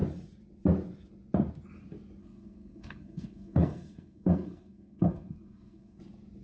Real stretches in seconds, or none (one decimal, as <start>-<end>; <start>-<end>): 0.0-2.2; 6.0-6.4